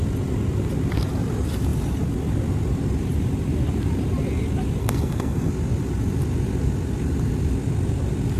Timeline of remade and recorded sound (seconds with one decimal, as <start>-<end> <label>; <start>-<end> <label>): 0.0-4.8 recorded; 4.8-5.5 remade; 5.5-8.4 recorded